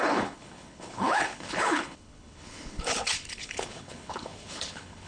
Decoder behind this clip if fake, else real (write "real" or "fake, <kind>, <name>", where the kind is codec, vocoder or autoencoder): fake, codec, HILCodec